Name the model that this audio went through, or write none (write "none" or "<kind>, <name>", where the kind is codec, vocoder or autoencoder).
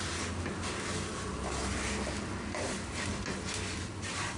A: none